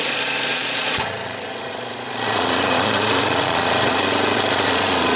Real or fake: fake